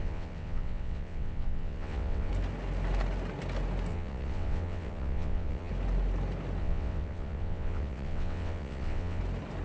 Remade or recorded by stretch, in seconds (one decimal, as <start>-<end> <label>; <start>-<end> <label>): 0.0-2.3 remade; 2.3-3.9 recorded; 3.9-5.7 remade; 5.7-6.6 recorded; 6.6-9.2 remade; 9.2-9.6 recorded